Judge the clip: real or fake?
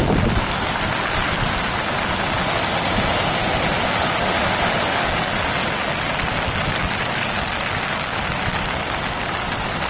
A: real